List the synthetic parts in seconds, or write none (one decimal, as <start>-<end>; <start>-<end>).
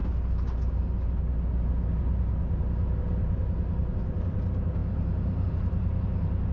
none